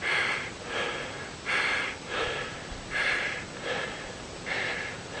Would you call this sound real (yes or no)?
yes